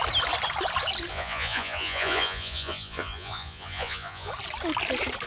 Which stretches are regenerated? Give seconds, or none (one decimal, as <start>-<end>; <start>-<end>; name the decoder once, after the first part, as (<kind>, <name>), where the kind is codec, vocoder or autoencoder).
1.1-4.3 (vocoder, Vocos)